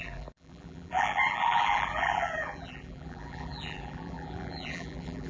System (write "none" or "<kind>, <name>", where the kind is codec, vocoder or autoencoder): vocoder, BigVGAN v2